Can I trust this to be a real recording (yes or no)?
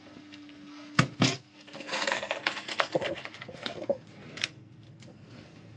no